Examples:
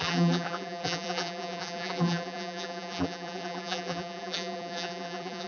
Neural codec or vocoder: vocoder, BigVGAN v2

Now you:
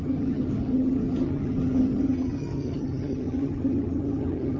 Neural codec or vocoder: vocoder, HiFi-GAN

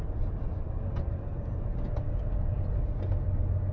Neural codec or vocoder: none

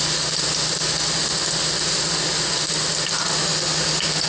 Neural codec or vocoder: none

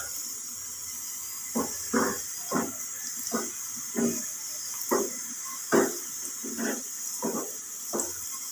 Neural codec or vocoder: none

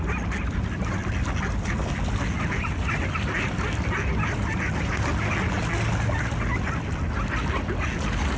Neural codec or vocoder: none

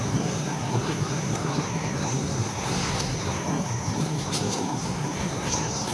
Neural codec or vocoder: codec, SNAC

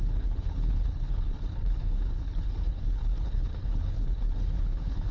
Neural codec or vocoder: codec, HILCodec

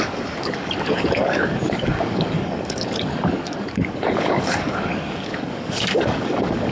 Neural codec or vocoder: codec, DAC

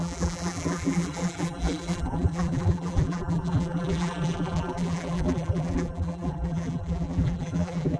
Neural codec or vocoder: vocoder, BigVGAN v2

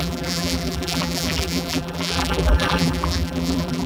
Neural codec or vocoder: vocoder, BigVGAN v2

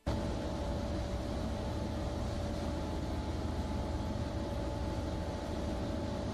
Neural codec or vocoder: none